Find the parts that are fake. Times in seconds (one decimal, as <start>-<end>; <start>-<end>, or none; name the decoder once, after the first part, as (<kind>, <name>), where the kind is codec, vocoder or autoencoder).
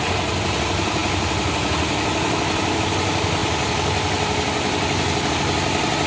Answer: none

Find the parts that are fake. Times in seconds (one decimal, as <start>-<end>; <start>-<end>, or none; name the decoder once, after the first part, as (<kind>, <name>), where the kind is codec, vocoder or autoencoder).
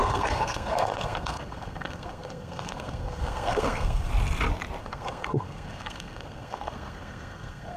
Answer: 0.0-4.1 (codec, SNAC); 4.8-7.8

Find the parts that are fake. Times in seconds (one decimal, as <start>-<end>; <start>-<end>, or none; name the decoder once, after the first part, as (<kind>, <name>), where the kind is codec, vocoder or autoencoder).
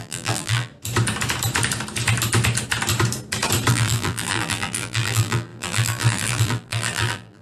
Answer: 0.0-0.7 (vocoder, BigVGAN v2); 3.7-7.4